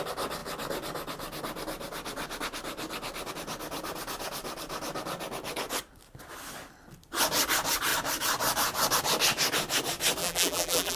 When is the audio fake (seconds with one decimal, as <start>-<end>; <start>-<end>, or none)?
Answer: 10.2-11.0